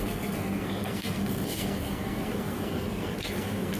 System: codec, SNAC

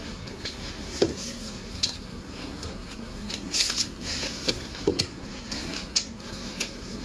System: codec, SNAC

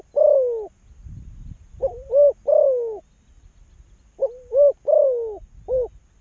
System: none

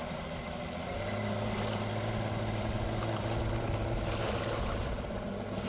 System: none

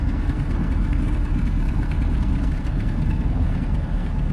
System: codec, SNAC